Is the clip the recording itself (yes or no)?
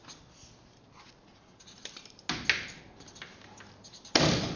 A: yes